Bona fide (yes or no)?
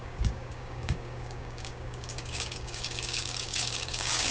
no